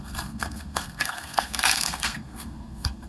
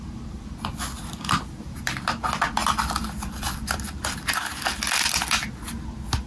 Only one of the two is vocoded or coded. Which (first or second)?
first